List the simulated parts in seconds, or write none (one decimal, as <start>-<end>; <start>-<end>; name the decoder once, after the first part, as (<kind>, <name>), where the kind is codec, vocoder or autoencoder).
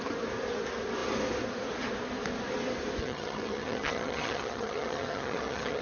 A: 3.0-5.8 (vocoder, HiFi-GAN)